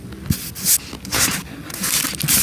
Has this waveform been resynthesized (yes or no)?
no